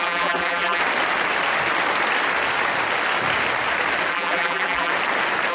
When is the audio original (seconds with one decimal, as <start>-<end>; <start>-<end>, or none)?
0.8-4.1; 4.9-5.5